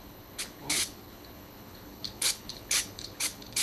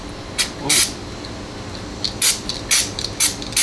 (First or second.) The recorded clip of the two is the second